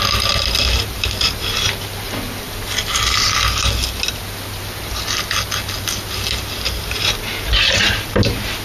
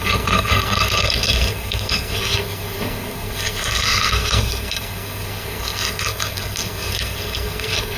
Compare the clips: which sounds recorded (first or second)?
first